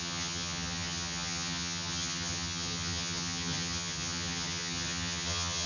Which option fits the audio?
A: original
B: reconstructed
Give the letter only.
B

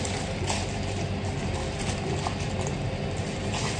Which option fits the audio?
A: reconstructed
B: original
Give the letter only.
B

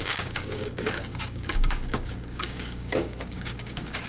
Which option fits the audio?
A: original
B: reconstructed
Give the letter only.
B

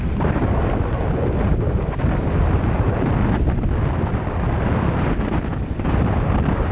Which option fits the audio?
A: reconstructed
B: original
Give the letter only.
B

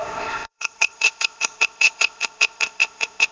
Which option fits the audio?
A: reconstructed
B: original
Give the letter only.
A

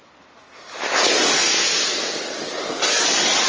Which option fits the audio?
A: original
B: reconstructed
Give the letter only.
A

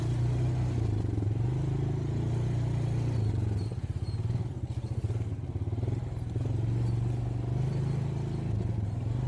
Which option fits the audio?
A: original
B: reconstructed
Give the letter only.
A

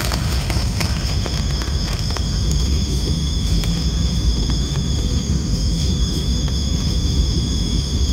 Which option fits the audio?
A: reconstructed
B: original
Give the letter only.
A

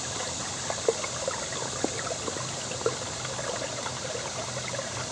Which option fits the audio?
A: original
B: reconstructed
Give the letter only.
A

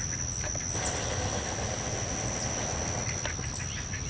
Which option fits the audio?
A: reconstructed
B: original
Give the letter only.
B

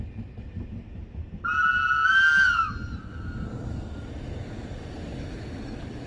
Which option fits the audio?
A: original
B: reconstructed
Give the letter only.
A